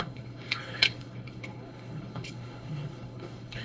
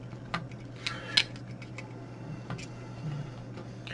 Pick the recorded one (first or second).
second